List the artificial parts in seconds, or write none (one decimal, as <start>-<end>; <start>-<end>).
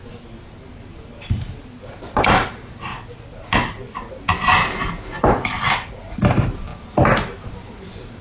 0.0-2.9; 6.0-8.2